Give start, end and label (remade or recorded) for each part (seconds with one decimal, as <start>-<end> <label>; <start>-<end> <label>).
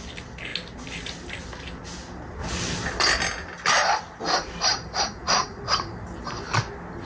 0.0-4.7 recorded; 4.7-5.6 remade; 5.6-7.0 recorded